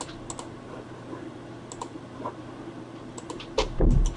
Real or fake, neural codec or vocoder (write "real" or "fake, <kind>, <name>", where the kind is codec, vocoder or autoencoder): real